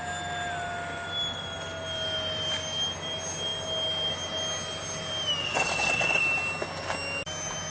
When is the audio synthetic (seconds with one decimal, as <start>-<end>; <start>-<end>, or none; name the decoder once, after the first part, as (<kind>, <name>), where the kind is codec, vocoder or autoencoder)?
5.4-6.2 (vocoder, WaveNeXt)

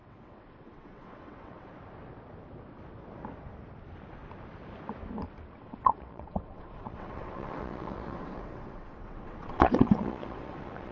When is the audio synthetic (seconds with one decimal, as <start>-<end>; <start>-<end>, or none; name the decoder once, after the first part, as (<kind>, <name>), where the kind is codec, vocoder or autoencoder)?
0.0-1.7 (vocoder, WaveNeXt); 5.6-10.9

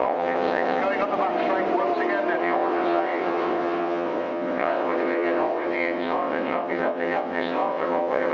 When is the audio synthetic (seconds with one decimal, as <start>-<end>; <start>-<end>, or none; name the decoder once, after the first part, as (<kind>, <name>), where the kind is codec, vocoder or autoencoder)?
0.0-0.8 (vocoder, WaveNeXt); 2.4-8.3